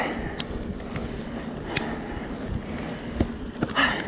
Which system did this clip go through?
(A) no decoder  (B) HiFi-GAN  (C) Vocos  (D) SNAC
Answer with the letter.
A